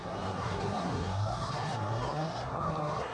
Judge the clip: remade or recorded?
remade